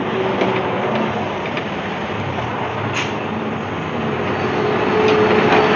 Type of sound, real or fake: real